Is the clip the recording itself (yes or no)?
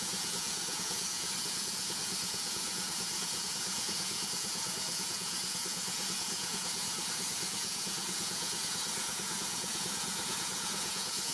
no